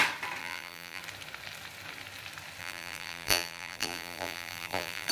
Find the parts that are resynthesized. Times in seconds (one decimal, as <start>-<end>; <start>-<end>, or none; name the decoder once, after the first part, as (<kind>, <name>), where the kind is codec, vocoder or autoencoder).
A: 0.4-1.0 (vocoder, BigVGAN v2); 2.6-5.1